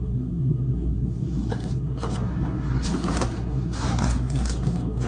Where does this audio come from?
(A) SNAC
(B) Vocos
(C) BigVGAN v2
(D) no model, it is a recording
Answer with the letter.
A